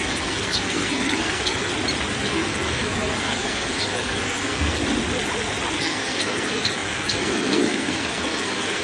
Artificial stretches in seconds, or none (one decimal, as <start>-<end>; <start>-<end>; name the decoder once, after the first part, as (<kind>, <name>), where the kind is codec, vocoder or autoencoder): 0.0-1.7 (codec, SNAC); 2.2-4.8; 5.8-8.8